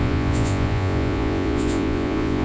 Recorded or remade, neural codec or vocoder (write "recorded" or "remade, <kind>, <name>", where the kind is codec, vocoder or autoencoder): remade, vocoder, Vocos